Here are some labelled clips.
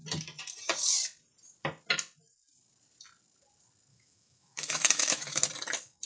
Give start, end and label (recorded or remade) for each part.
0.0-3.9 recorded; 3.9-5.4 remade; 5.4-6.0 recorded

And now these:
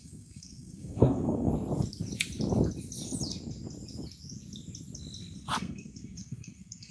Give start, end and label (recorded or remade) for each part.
0.0-1.5 remade; 1.5-5.6 recorded; 5.6-6.9 remade

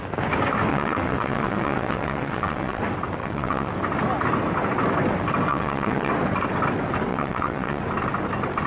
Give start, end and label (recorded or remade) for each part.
0.0-0.7 recorded; 0.7-2.8 remade; 2.8-3.2 recorded; 3.2-3.7 remade; 3.7-5.5 recorded; 5.5-6.1 remade; 6.1-7.1 recorded; 7.1-7.8 remade; 7.8-8.7 recorded